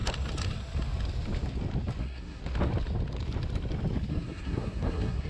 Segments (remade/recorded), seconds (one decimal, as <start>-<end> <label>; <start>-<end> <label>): 0.0-2.0 recorded; 2.0-2.4 remade; 2.4-4.1 recorded; 4.1-5.3 remade